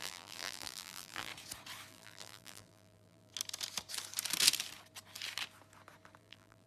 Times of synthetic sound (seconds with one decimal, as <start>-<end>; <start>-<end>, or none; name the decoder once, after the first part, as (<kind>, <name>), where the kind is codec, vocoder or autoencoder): 0.0-1.3 (vocoder, BigVGAN v2); 1.9-3.3; 6.2-6.7